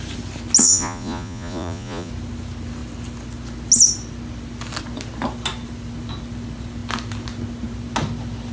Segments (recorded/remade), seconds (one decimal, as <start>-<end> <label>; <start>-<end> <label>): 0.0-0.6 recorded; 0.6-2.1 remade; 2.1-8.5 recorded